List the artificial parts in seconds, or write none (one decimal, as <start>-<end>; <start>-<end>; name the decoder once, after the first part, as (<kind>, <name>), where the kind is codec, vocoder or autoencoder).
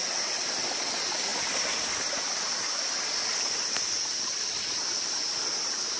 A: none